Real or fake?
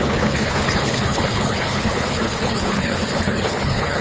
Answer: fake